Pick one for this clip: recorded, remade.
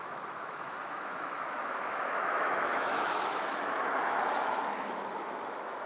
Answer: remade